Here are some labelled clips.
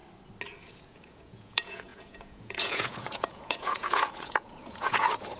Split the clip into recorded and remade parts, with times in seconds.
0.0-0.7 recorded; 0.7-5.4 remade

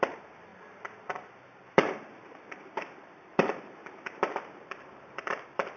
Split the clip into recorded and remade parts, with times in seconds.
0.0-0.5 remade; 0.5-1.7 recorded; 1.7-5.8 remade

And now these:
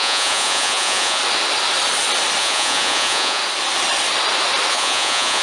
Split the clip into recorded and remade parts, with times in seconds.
0.0-1.2 remade; 1.2-2.4 recorded; 2.4-3.4 remade; 3.4-4.7 recorded; 4.7-5.4 remade

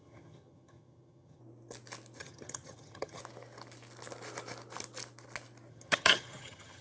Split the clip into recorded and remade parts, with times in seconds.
0.0-1.4 remade; 1.4-2.2 recorded; 2.2-3.2 remade; 3.2-5.7 recorded; 5.7-6.8 remade